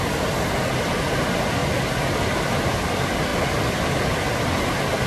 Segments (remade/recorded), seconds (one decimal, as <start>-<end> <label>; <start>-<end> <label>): 0.0-5.1 recorded